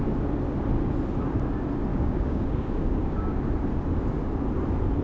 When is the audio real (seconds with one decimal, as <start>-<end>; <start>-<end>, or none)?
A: 0.0-1.9; 3.4-5.0